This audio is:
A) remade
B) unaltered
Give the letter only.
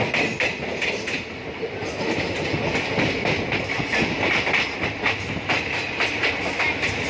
B